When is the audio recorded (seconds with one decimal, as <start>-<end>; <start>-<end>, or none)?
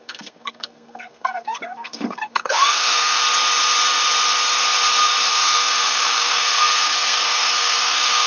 3.2-5.3